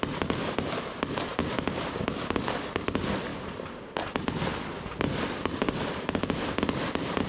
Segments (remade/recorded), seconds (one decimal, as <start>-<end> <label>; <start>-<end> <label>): 0.0-7.3 recorded